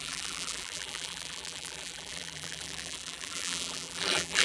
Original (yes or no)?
no